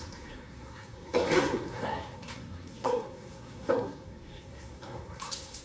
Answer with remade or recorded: remade